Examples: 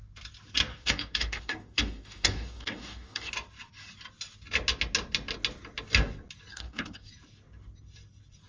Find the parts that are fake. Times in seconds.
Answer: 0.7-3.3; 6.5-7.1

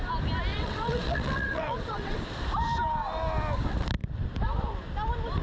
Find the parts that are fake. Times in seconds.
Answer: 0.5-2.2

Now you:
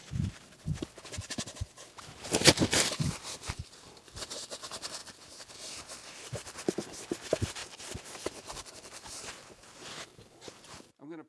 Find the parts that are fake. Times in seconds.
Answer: 0.0-11.3